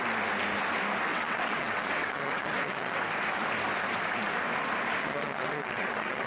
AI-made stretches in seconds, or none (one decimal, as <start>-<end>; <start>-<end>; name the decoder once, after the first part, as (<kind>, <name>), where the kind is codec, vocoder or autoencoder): 1.1-3.0 (vocoder, WaveNeXt); 5.0-6.3